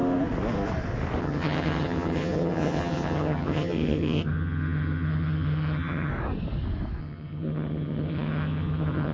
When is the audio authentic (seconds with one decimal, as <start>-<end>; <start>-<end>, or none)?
0.0-1.2; 6.1-7.0